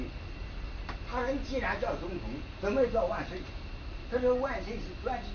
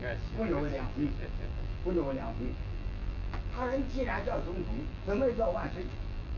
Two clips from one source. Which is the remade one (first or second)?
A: second